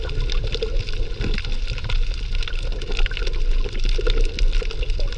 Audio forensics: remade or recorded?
recorded